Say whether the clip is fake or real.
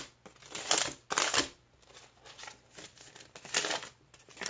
real